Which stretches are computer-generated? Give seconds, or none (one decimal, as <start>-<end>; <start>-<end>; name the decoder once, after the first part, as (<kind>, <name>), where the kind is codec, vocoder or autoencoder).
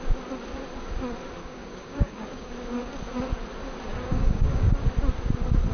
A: 1.4-2.5 (codec, DAC); 3.9-4.7